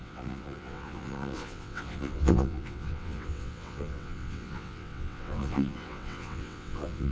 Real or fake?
fake